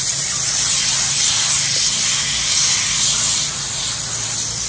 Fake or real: real